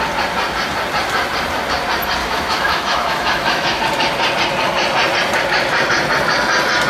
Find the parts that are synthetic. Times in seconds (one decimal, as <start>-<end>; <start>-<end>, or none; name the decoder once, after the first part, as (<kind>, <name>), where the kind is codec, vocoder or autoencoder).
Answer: 2.2-3.8 (autoencoder, DAC-VAE)